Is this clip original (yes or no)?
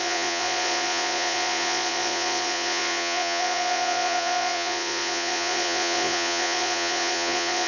no